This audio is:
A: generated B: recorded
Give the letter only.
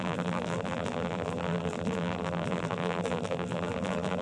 A